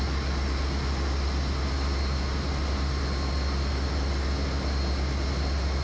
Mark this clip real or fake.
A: real